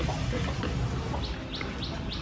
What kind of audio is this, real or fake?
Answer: real